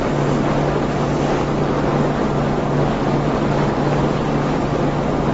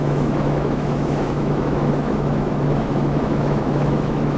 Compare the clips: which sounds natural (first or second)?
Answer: first